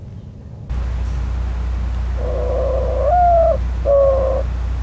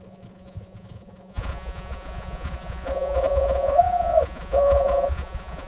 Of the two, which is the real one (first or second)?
first